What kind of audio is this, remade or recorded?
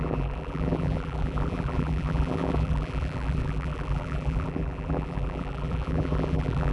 remade